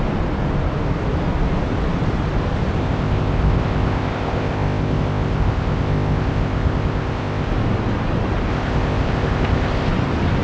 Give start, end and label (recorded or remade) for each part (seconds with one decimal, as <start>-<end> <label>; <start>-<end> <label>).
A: 0.0-2.8 recorded; 2.8-7.5 remade; 7.5-8.5 recorded; 8.5-9.9 remade; 9.9-10.4 recorded